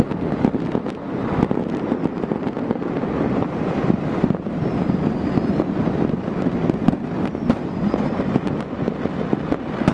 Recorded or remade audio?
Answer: remade